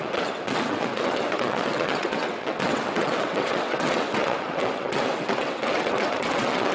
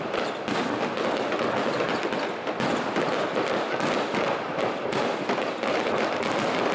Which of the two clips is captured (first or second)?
second